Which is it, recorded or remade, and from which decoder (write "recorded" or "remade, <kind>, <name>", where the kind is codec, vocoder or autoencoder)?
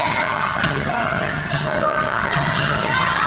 remade, vocoder, HiFi-GAN